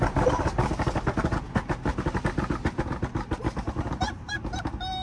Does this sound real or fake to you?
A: real